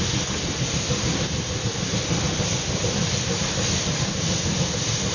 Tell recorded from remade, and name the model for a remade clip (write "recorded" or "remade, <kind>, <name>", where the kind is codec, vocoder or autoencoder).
recorded